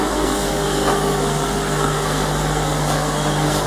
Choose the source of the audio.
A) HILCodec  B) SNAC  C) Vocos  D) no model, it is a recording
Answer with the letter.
B